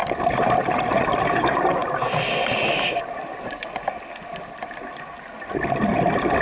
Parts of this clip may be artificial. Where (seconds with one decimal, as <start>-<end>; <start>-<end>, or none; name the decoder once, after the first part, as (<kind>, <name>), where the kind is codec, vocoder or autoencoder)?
none